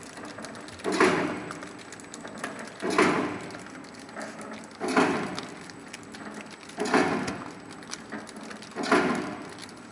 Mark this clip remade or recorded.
recorded